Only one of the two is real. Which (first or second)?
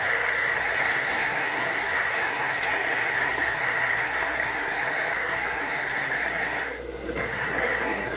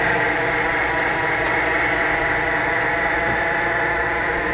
second